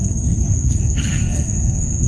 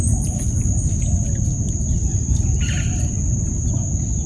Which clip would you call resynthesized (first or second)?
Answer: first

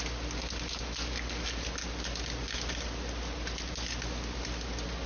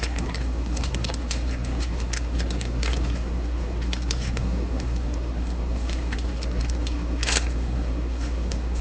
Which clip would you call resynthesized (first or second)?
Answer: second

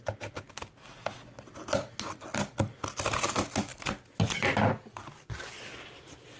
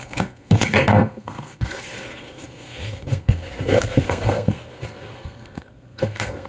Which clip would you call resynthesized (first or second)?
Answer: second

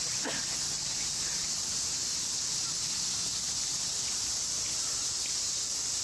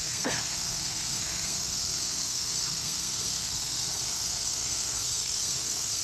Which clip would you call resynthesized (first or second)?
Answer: second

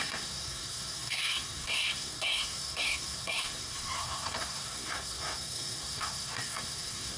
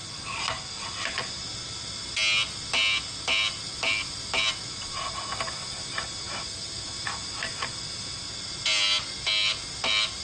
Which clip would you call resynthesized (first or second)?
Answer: first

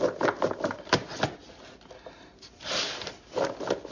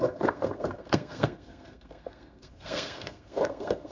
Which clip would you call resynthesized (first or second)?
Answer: second